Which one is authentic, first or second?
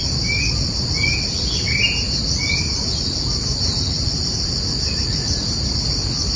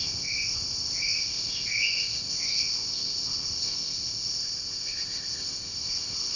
first